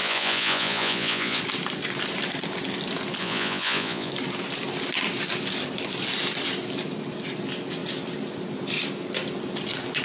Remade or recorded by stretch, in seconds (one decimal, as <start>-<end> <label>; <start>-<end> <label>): 0.0-1.4 remade; 1.4-3.2 recorded; 3.2-4.1 remade; 4.1-10.0 recorded